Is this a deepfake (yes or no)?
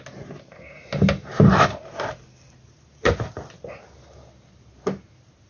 no